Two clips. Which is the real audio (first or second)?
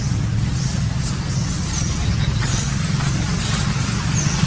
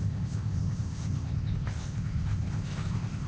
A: first